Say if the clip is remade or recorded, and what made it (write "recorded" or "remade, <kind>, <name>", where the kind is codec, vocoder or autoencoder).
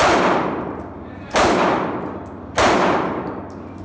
recorded